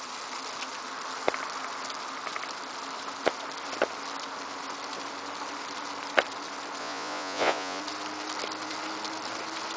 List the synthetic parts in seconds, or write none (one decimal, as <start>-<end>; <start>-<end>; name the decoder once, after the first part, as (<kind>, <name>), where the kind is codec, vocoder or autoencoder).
6.8-7.8 (vocoder, Vocos)